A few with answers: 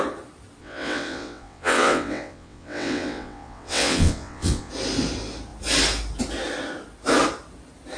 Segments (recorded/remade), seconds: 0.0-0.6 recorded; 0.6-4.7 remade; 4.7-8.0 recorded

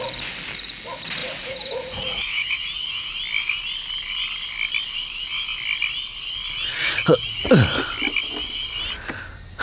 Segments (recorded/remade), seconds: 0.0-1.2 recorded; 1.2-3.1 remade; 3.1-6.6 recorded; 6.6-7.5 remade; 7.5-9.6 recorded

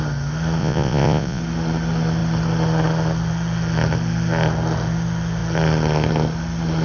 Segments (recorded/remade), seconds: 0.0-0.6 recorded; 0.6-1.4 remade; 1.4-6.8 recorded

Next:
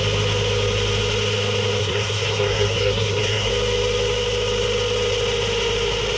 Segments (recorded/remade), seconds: 0.0-1.8 recorded; 1.8-3.5 remade; 3.5-6.2 recorded

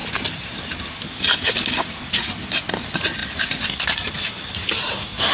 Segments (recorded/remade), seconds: 0.0-5.3 recorded

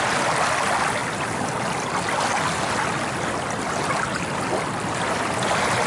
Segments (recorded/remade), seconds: 0.0-5.9 recorded

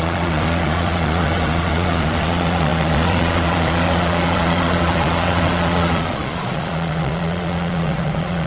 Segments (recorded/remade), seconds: 0.0-8.5 remade

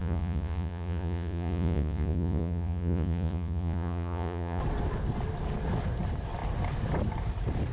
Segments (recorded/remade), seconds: 0.0-4.6 remade; 4.6-7.7 recorded